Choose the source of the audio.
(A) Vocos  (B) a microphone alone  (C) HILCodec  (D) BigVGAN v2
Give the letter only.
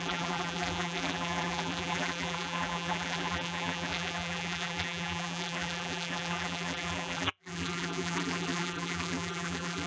D